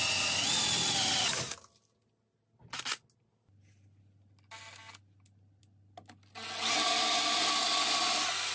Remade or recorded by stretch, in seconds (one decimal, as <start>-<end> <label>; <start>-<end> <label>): 0.0-8.5 recorded